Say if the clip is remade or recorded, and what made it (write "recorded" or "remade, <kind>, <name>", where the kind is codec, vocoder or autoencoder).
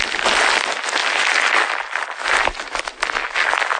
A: recorded